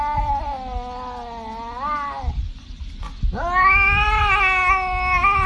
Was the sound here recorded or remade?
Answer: recorded